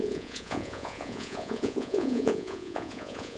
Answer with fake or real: fake